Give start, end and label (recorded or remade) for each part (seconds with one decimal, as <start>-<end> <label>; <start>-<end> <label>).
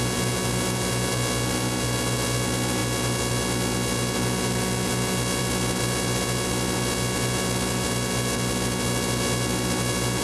0.0-10.2 recorded